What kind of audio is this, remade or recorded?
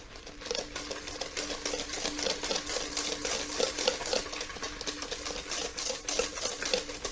recorded